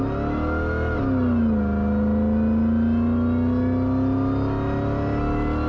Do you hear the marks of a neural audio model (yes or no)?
no